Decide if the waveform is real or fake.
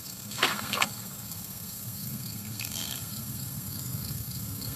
fake